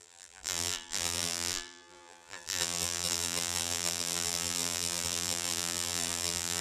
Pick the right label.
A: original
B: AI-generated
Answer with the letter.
B